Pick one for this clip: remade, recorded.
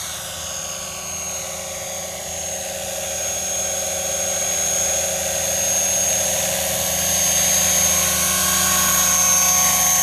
recorded